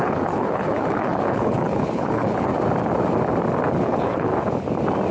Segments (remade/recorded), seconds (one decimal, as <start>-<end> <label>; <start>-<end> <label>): 0.0-2.5 remade; 2.5-3.8 recorded; 3.8-4.3 remade; 4.3-5.1 recorded